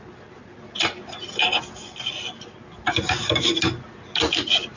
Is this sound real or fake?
real